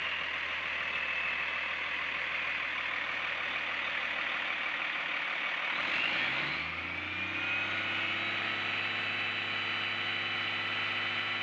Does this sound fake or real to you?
real